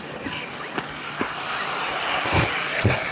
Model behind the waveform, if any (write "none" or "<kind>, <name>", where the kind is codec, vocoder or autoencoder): none